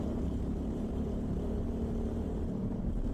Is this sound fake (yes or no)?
yes